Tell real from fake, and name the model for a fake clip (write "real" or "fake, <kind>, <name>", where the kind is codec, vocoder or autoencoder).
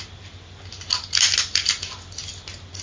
real